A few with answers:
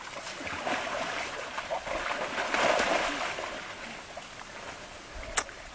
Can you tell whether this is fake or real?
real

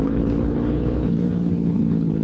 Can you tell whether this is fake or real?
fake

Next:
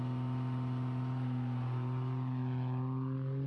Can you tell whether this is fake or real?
real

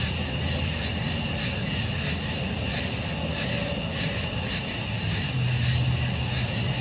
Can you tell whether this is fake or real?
real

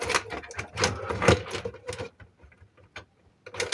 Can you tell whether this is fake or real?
real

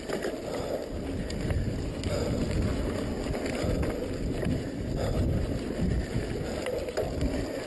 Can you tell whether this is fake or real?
real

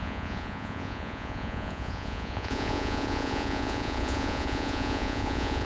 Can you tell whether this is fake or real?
fake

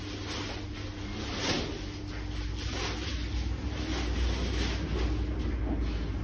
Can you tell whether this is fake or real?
real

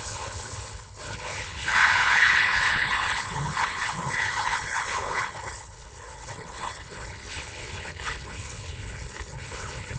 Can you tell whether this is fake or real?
fake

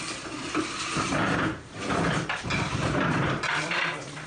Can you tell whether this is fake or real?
fake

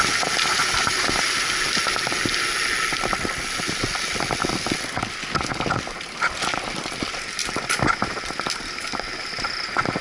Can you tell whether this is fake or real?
real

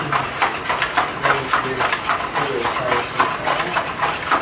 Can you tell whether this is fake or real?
real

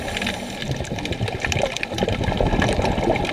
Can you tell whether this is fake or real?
real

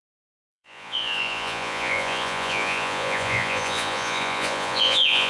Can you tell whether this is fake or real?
fake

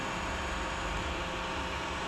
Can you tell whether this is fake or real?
real